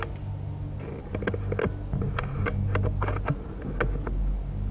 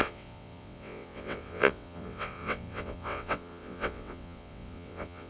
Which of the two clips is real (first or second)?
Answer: first